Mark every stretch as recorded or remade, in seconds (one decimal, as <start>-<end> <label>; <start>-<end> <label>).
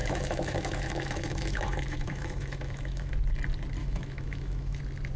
0.0-3.1 remade; 3.1-3.8 recorded; 3.8-4.8 remade; 4.8-5.2 recorded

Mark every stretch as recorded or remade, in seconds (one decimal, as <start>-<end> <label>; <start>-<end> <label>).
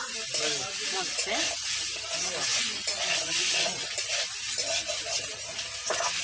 0.0-2.5 recorded; 2.5-3.9 remade; 3.9-6.2 recorded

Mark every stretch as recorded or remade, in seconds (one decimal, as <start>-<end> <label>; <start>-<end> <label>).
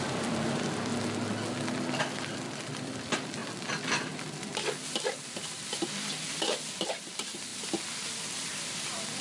0.0-0.9 remade; 0.9-2.0 recorded; 2.0-3.4 remade; 3.4-4.9 recorded; 4.9-7.5 remade; 7.5-8.3 recorded; 8.3-9.2 remade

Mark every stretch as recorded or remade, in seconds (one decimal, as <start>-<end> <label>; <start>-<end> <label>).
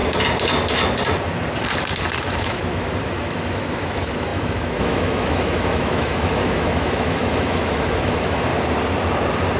0.0-2.4 recorded; 2.4-8.5 remade; 8.5-9.6 recorded